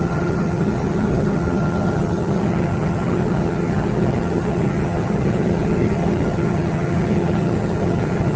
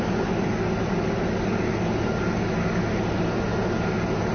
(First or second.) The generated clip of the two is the first